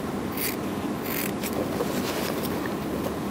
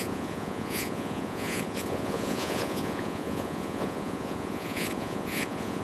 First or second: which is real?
first